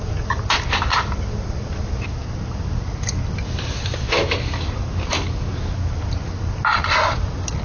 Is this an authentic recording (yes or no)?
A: yes